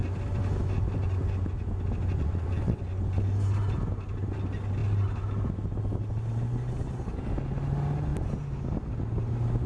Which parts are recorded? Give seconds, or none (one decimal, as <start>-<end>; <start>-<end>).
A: 0.0-2.2; 2.8-9.7